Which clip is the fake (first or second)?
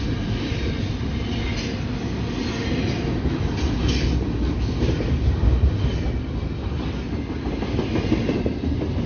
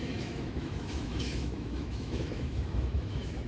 second